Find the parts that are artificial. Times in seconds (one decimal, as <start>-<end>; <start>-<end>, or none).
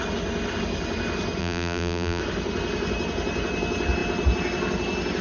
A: 1.4-2.2